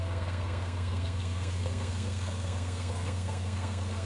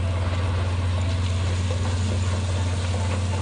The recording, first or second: second